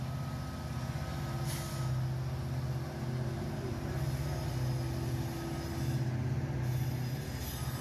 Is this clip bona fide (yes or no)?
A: yes